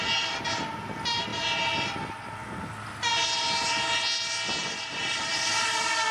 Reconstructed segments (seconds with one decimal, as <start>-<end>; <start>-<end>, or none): 4.6-5.3